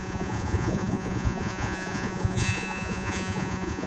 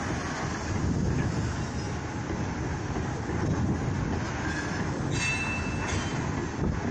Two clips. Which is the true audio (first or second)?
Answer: second